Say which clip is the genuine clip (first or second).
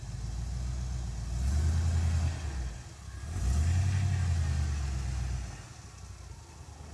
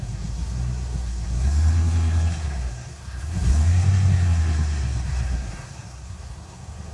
first